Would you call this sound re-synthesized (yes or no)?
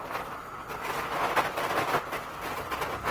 no